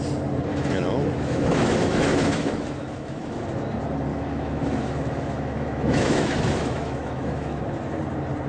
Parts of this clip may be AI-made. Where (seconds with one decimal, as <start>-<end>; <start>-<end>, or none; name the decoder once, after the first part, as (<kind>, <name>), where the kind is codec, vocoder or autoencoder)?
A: 0.5-3.4 (autoencoder, DAC-VAE); 4.1-7.6